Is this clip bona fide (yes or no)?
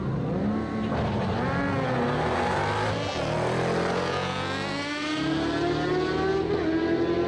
yes